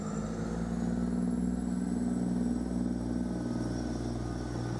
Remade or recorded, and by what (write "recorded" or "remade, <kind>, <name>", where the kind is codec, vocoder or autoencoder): recorded